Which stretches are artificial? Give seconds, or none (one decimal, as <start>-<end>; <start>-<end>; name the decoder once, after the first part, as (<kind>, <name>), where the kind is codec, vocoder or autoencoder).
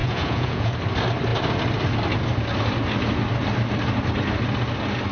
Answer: 0.0-0.7 (vocoder, Vocos)